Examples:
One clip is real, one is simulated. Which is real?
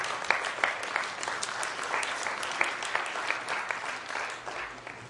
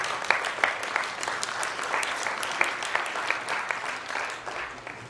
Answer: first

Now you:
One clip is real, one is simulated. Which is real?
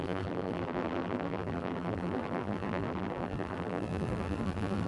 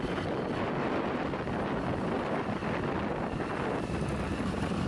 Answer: second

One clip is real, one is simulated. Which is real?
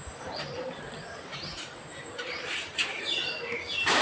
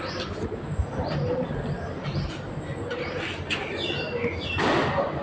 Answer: second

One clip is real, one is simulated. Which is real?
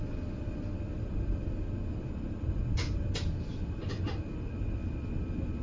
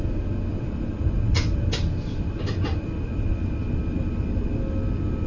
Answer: second